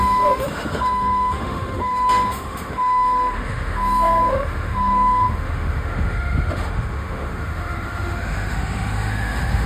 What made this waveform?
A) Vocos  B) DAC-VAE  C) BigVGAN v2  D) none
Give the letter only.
B